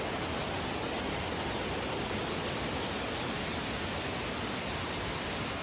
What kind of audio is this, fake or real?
real